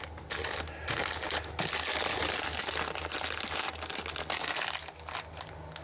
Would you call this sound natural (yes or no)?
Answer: yes